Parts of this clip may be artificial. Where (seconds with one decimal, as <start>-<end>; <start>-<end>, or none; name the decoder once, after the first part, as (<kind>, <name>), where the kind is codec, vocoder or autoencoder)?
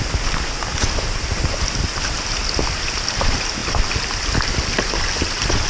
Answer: none